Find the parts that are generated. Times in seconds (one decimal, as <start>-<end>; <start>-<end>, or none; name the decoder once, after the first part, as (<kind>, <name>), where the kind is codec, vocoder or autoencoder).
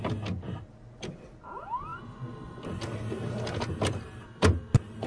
none